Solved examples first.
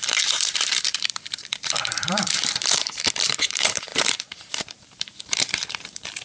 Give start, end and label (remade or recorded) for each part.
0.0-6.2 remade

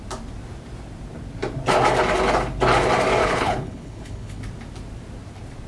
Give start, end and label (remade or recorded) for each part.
0.0-3.2 recorded; 3.2-4.4 remade; 4.4-5.7 recorded

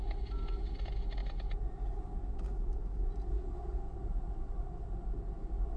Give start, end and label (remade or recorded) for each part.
0.0-5.8 recorded

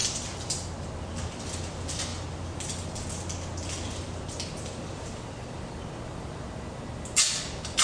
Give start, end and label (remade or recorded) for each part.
0.0-1.4 remade; 1.4-2.1 recorded; 2.1-6.8 remade; 6.8-7.8 recorded

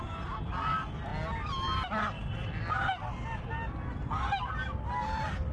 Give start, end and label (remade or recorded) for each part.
0.0-5.5 recorded

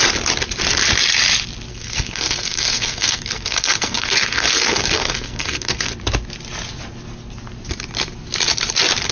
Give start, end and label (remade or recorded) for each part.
0.0-1.7 recorded; 1.7-5.9 remade; 5.9-9.1 recorded

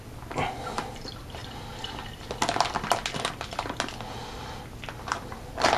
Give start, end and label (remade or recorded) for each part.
0.0-5.8 recorded